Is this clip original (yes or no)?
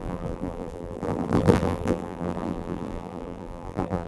no